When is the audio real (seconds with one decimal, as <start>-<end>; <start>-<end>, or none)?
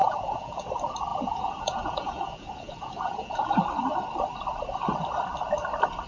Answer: 0.7-1.1; 3.6-6.1